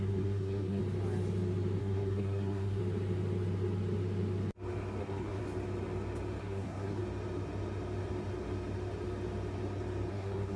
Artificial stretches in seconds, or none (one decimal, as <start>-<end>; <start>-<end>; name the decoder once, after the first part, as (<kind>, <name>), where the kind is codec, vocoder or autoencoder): 0.0-0.8 (codec, SNAC); 1.8-2.8; 5.0-5.4; 6.4-7.0; 10.1-10.6